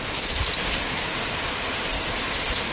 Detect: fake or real real